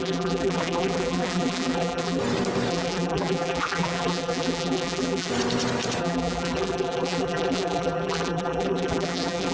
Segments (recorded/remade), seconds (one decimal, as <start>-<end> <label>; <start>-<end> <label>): 0.0-2.2 remade; 2.2-2.7 recorded; 2.7-5.3 remade; 5.3-6.0 recorded; 6.0-9.5 remade